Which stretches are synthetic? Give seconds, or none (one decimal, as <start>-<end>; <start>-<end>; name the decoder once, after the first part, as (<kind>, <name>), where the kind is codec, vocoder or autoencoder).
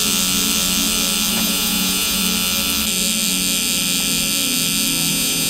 1.3-2.2 (vocoder, Vocos); 5.1-5.5